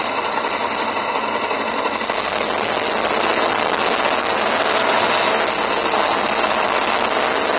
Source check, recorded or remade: recorded